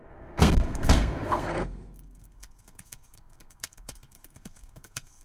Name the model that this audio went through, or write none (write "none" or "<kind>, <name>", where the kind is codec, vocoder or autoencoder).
codec, SNAC